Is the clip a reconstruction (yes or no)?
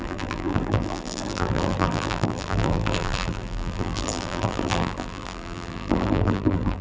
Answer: yes